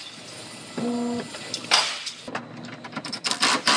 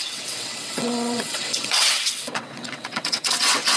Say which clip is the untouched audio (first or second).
first